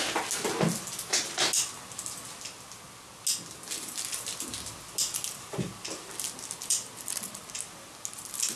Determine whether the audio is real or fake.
real